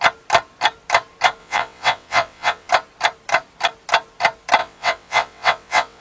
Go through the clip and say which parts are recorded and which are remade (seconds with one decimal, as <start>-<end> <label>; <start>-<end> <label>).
0.0-1.4 recorded; 1.4-2.7 remade; 2.7-4.6 recorded; 4.6-6.0 remade